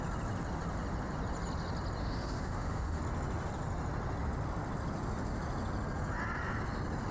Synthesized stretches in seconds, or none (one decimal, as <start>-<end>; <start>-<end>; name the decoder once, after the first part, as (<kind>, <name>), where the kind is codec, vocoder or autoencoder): 2.0-3.0 (autoencoder, DAC-VAE)